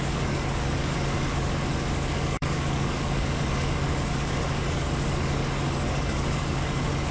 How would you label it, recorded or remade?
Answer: remade